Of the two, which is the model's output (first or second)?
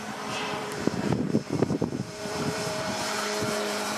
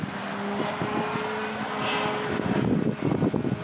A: first